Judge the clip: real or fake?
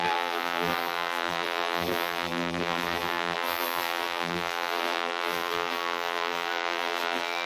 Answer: fake